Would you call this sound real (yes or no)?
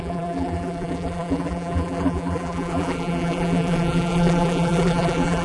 no